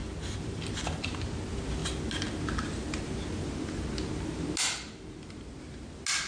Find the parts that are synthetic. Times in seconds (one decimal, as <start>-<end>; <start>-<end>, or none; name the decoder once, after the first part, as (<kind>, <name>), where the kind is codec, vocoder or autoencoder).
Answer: none